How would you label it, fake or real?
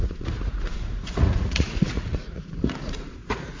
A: fake